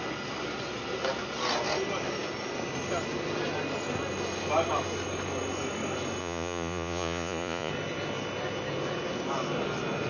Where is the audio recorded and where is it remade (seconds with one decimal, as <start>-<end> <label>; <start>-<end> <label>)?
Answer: 0.0-6.2 recorded; 6.2-7.7 remade; 7.7-10.1 recorded